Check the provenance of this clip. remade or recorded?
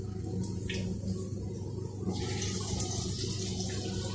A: recorded